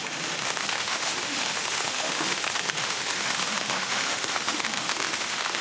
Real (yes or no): no